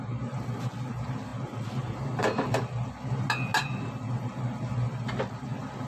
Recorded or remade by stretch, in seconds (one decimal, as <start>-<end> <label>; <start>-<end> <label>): 0.0-5.9 recorded